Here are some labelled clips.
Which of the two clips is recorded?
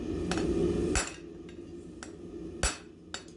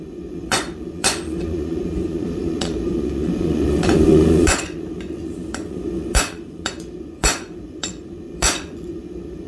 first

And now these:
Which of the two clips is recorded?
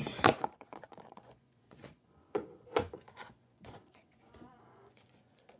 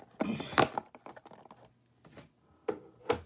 second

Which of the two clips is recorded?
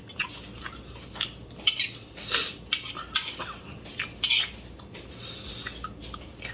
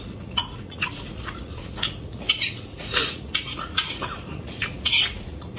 first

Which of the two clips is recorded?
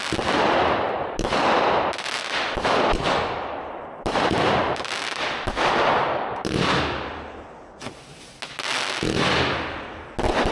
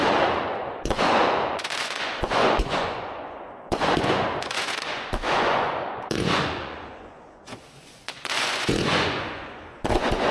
first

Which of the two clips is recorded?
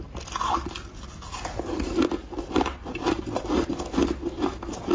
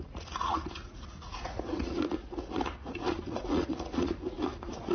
first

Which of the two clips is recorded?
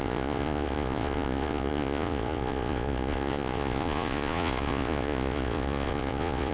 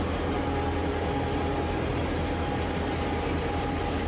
second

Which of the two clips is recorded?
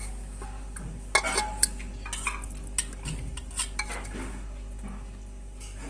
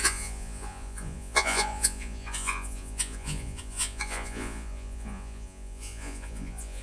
first